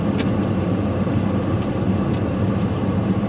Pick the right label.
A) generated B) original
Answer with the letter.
B